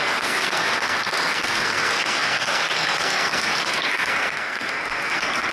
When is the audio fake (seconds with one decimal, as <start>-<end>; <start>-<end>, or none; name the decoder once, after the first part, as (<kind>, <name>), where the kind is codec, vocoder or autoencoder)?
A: 0.0-5.5 (codec, SNAC)